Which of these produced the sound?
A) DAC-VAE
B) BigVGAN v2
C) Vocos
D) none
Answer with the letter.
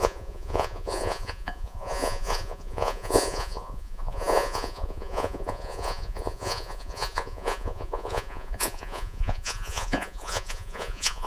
C